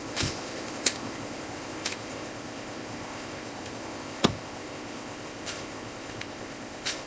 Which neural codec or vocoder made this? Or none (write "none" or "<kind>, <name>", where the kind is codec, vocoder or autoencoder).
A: codec, ZipCodec